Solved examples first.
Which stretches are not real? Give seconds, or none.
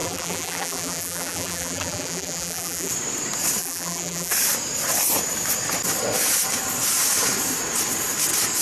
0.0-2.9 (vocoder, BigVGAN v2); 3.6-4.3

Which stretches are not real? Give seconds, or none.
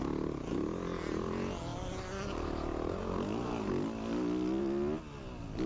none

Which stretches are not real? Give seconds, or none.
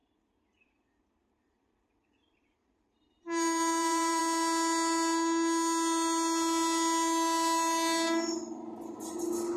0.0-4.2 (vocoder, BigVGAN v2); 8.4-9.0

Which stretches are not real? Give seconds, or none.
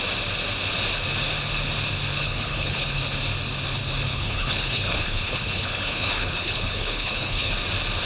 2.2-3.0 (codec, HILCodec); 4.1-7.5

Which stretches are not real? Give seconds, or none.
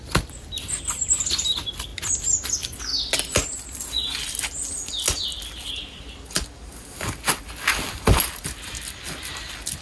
none